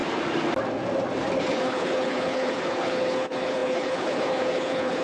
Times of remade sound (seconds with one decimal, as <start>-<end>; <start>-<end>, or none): 1.4-5.0